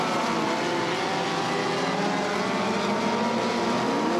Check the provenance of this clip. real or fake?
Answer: real